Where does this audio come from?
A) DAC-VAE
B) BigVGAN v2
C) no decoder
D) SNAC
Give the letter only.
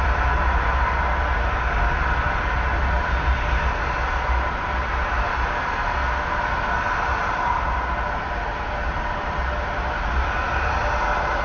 C